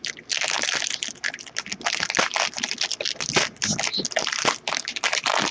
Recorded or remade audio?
recorded